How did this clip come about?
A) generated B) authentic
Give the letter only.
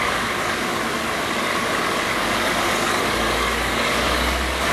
A